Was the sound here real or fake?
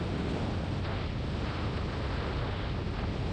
real